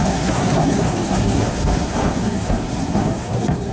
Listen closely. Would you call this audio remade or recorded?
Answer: remade